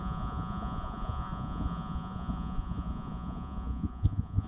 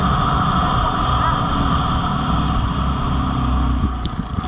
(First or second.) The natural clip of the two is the second